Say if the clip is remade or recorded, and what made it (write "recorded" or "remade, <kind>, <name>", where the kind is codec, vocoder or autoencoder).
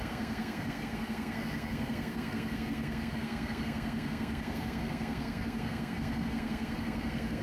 remade, codec, SNAC